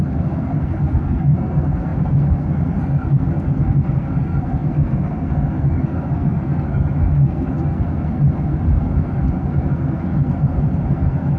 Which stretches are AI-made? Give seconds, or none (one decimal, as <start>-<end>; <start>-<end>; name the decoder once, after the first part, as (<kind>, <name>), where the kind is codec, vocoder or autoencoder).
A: 0.0-11.4 (codec, SNAC)